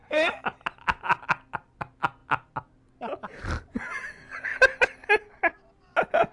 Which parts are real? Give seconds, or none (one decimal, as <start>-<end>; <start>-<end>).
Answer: 0.0-6.3